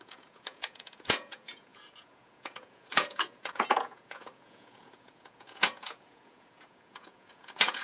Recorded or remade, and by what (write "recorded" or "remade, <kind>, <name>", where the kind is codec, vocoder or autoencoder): remade, vocoder, Vocos